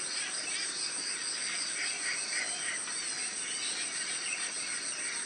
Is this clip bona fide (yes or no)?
yes